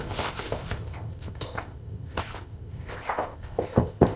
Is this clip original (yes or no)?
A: no